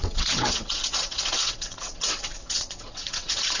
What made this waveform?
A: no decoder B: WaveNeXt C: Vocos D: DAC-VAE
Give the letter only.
B